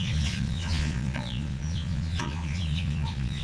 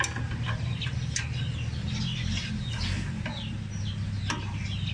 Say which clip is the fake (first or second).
first